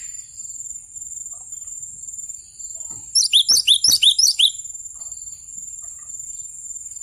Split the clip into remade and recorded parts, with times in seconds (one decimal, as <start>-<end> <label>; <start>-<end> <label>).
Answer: 0.0-7.0 recorded